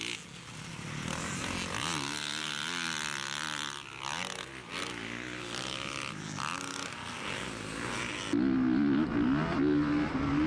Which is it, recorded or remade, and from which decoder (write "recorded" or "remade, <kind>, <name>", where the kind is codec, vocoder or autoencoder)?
recorded